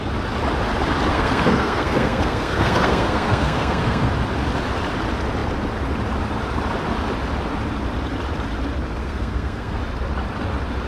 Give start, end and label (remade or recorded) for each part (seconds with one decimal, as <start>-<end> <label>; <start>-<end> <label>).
0.0-1.1 recorded; 1.1-4.1 remade; 4.1-9.0 recorded; 9.0-9.8 remade; 9.8-10.9 recorded